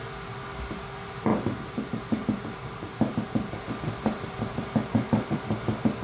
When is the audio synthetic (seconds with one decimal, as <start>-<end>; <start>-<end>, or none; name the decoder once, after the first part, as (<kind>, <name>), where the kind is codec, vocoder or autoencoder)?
1.3-3.6 (vocoder, BigVGAN v2)